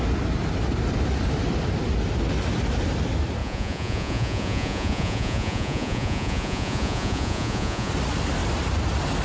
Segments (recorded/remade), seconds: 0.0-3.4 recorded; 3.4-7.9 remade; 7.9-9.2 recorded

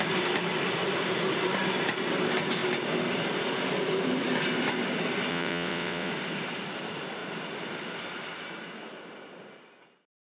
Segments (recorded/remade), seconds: 0.0-5.3 recorded; 5.3-6.1 remade; 6.1-10.3 recorded